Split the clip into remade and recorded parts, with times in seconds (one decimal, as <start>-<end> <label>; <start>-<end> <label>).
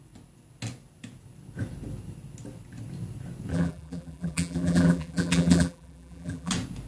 0.0-3.5 recorded; 3.5-6.5 remade; 6.5-6.9 recorded